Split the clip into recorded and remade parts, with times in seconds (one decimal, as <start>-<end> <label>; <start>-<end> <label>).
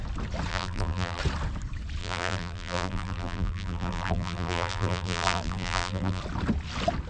0.0-0.5 recorded; 0.5-1.2 remade; 1.2-2.0 recorded; 2.0-6.2 remade; 6.2-7.1 recorded